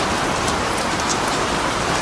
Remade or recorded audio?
recorded